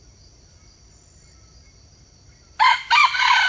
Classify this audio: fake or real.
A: real